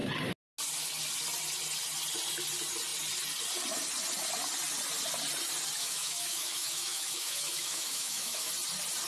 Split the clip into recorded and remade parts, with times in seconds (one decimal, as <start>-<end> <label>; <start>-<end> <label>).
0.0-5.8 recorded; 5.8-8.5 remade; 8.5-9.1 recorded